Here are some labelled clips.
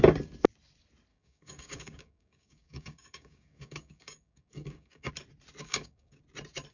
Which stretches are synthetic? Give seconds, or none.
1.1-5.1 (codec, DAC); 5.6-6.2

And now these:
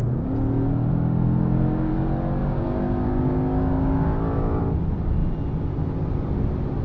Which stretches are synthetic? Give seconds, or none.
0.9-1.9 (codec, DAC); 2.4-4.6